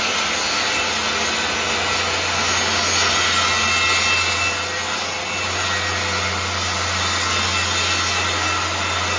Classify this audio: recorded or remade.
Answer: recorded